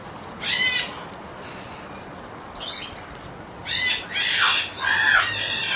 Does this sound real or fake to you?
real